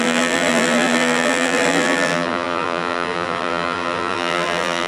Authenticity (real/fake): fake